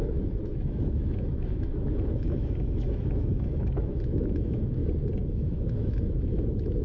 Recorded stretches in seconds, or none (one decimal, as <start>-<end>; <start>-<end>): 4.8-5.3